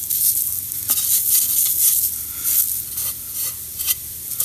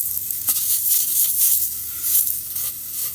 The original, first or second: first